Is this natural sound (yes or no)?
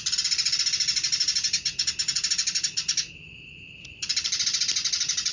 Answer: yes